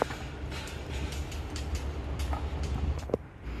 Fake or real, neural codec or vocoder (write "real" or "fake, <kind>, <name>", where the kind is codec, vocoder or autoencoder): real